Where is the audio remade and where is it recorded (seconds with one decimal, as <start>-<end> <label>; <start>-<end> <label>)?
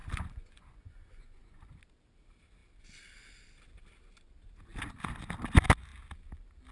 0.0-1.7 remade; 1.7-6.7 recorded